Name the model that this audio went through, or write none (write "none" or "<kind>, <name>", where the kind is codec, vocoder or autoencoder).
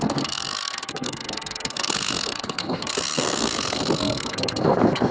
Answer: codec, SNAC